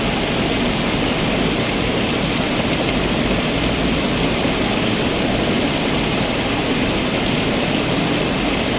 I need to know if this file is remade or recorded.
recorded